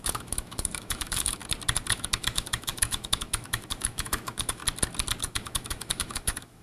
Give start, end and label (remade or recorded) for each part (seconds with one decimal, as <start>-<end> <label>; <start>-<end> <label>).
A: 0.0-1.4 remade; 1.4-1.9 recorded; 1.9-4.6 remade; 4.6-5.2 recorded; 5.2-6.6 remade